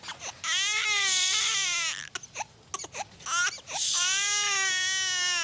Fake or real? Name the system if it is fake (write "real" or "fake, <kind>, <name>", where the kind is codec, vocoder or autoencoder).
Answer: real